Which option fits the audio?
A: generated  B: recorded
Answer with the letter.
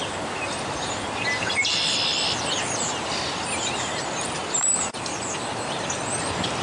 B